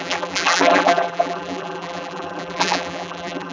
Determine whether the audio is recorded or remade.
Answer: remade